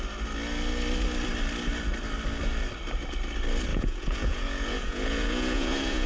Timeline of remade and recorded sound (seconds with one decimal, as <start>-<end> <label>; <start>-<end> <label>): 0.0-3.7 recorded; 3.7-6.1 remade